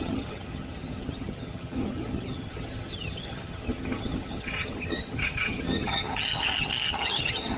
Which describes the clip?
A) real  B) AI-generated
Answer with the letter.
B